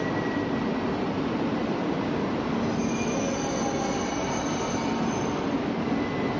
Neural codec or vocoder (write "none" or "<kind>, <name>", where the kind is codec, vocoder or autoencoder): none